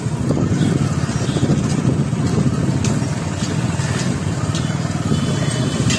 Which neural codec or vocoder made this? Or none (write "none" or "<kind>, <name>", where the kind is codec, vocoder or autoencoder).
none